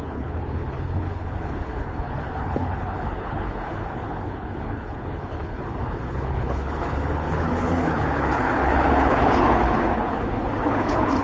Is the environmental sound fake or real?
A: fake